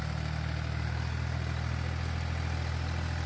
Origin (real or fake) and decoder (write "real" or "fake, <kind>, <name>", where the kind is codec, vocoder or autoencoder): real